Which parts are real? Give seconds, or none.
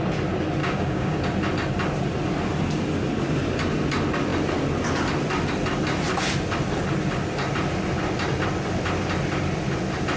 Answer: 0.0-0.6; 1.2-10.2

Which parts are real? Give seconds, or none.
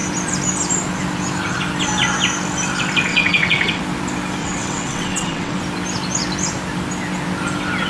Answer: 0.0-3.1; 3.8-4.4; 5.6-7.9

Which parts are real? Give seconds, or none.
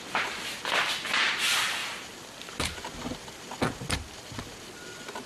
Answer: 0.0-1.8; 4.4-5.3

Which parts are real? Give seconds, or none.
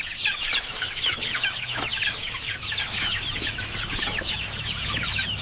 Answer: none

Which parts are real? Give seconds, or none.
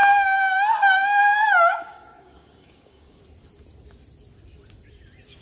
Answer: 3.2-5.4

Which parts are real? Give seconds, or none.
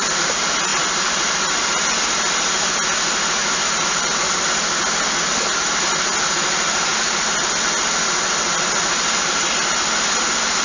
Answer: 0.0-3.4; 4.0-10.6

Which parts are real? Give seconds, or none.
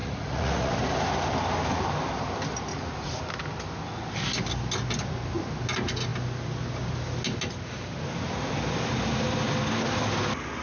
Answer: 0.7-2.7; 3.2-10.6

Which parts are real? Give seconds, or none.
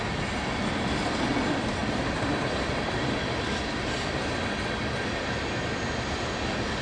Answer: 0.0-1.8; 4.6-6.8